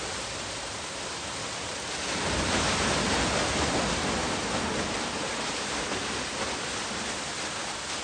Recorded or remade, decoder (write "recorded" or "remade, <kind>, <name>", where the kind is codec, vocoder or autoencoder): recorded